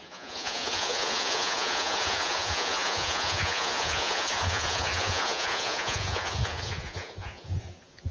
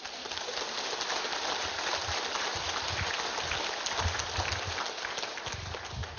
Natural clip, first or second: second